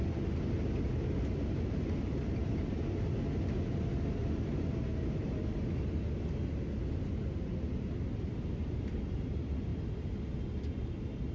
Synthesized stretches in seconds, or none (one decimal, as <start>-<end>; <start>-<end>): none